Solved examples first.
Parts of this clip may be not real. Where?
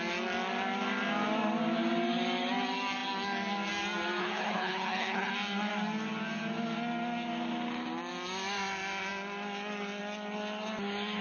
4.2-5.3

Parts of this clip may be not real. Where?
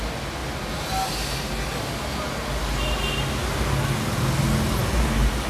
none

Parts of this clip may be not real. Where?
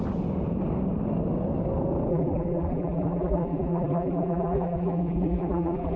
2.1-6.0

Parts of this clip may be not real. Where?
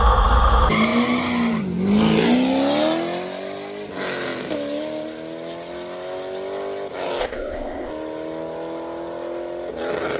7.2-7.9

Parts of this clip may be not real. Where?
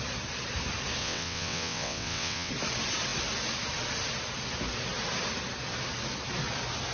1.0-2.5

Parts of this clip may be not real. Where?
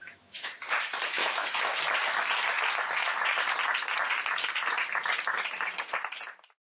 0.0-0.5; 1.2-1.8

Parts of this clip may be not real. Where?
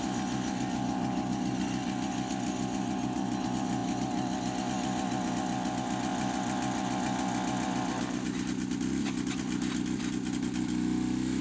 none